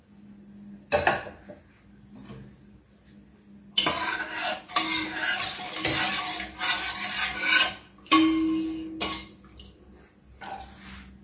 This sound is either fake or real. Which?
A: real